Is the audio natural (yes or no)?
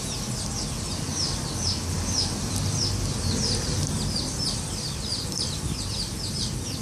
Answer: yes